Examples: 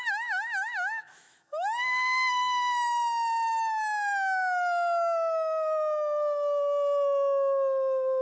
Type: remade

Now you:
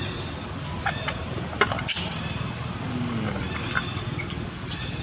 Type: recorded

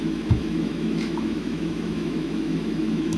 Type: remade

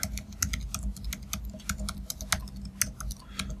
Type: recorded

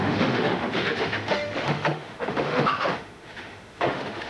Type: remade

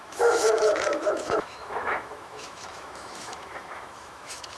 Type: remade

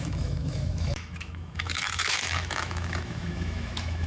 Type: remade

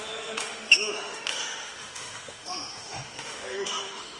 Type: remade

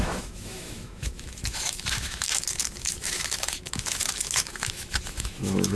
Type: remade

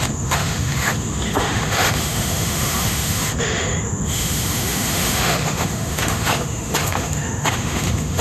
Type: remade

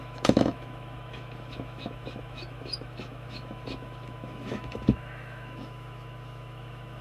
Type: remade